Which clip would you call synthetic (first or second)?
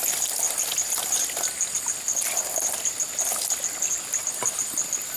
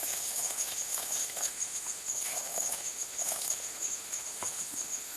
second